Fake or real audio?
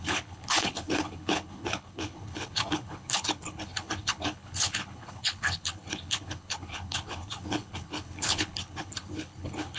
fake